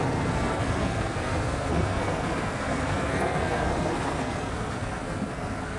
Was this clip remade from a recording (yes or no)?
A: yes